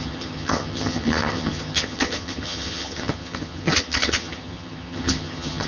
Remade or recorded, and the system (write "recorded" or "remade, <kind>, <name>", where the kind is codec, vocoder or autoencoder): remade, vocoder, HiFi-GAN